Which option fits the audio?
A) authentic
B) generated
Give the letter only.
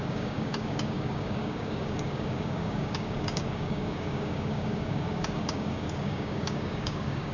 B